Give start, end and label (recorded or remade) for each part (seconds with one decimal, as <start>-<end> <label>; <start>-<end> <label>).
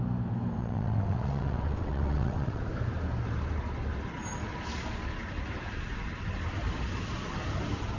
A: 0.0-0.6 recorded; 0.6-2.6 remade; 2.6-8.0 recorded